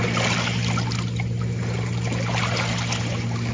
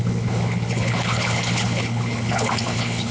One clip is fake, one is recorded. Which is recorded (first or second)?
first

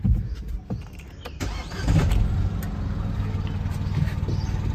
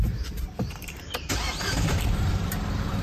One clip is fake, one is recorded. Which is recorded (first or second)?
first